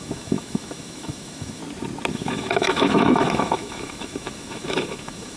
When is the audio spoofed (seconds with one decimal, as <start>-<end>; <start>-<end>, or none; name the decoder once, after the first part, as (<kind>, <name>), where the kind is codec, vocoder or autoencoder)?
0.0-1.6 (autoencoder, DAC-VAE); 2.1-5.4